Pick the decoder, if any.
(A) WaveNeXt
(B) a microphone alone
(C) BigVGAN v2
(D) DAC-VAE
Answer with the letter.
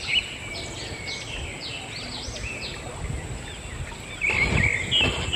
B